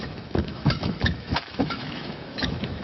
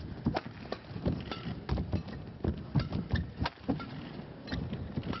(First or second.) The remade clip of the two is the first